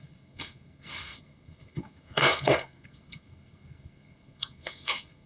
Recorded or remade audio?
remade